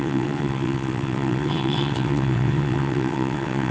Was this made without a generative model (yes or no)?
no